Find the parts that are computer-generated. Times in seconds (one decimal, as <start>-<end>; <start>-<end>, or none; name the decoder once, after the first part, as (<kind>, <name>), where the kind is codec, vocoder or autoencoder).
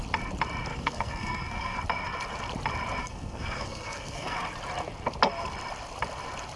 0.7-1.8 (codec, SNAC); 3.0-4.4